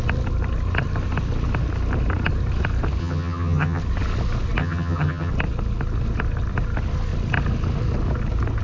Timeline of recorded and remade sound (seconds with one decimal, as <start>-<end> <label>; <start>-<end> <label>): 0.0-3.0 recorded; 3.0-3.8 remade; 3.8-4.6 recorded; 4.6-5.3 remade; 5.3-8.6 recorded